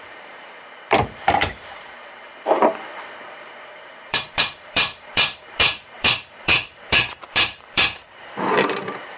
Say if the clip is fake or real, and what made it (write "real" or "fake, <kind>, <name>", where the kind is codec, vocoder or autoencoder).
fake, vocoder, BigVGAN v2